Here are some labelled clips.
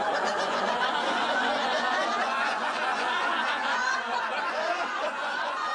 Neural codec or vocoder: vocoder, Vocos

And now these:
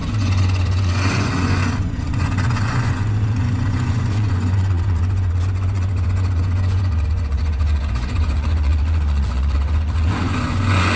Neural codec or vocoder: vocoder, Vocos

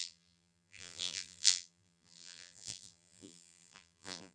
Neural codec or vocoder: vocoder, BigVGAN v2